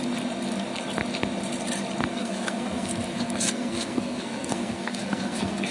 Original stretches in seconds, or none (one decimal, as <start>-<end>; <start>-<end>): 0.0-2.1